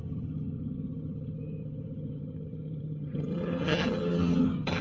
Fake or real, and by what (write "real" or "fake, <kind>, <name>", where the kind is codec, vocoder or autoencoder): fake, vocoder, HiFi-GAN